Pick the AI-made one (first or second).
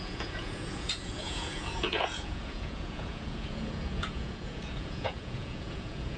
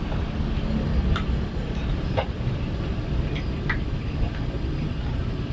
first